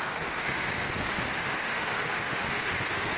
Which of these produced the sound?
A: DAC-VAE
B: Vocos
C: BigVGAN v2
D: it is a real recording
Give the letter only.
A